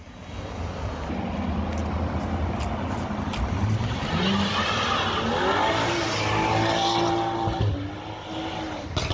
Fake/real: real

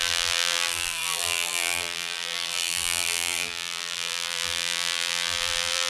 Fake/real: fake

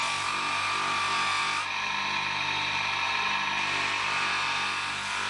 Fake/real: real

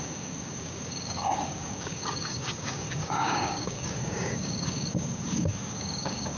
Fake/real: fake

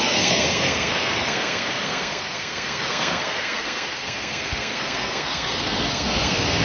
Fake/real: fake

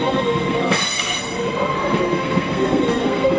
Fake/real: fake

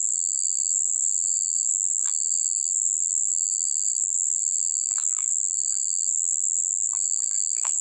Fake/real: fake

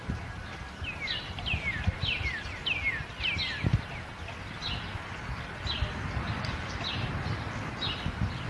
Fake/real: real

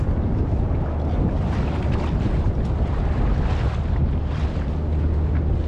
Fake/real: real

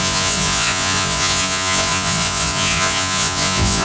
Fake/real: fake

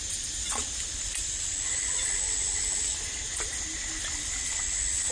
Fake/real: real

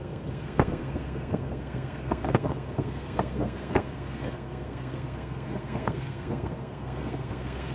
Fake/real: fake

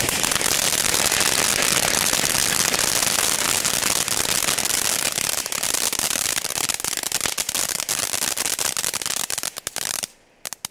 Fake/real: real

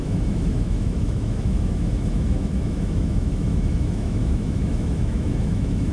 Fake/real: fake